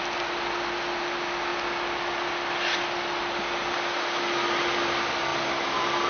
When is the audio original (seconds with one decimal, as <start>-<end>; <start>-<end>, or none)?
0.0-6.1